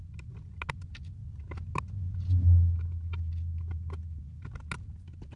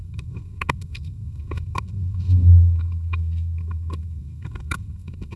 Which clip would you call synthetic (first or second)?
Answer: second